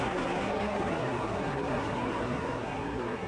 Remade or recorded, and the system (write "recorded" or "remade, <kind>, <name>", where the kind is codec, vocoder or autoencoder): remade, codec, SNAC